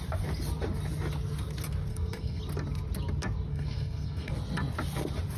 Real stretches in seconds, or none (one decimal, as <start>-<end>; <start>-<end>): 0.0-1.9; 2.4-3.5; 4.3-5.4

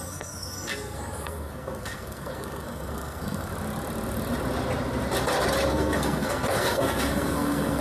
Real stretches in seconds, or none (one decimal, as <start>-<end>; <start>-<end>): 3.5-5.7

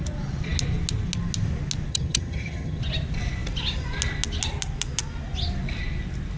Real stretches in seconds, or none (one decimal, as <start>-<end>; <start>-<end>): 0.0-1.9; 2.8-6.4

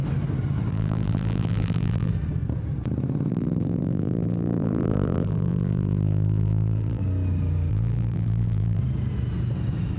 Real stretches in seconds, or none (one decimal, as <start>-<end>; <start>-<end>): 0.0-0.7; 2.1-3.3; 7.0-7.7; 8.8-10.0

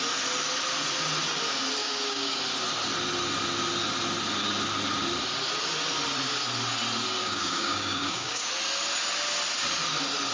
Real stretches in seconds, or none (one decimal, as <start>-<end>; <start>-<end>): 0.0-1.8; 2.4-7.2; 8.5-10.3